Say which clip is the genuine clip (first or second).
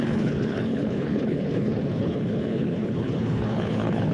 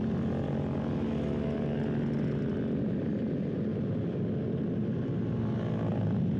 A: second